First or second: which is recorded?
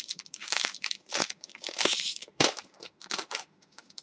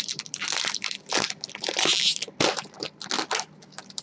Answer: second